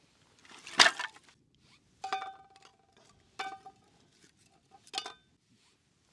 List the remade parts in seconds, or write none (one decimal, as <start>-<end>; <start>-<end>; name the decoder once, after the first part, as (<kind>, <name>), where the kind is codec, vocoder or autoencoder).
none